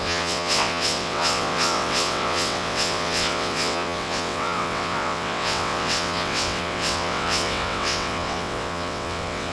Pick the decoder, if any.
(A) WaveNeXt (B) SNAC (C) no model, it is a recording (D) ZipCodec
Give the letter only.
A